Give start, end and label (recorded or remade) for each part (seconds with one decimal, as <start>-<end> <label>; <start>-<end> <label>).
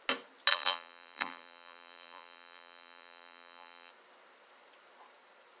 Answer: 0.0-0.5 recorded; 0.5-3.9 remade; 3.9-5.6 recorded